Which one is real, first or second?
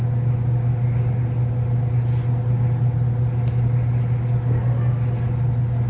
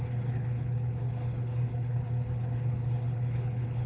first